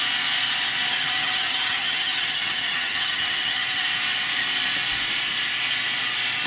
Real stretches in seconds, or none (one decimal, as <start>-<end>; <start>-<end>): 0.0-0.9; 3.8-6.5